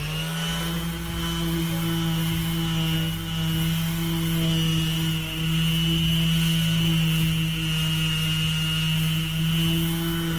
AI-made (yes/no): no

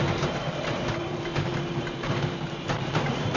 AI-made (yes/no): yes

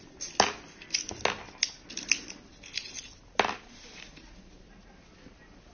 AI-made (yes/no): no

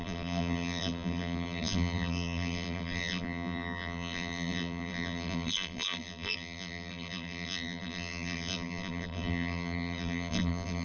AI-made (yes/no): yes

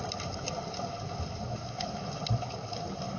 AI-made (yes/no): no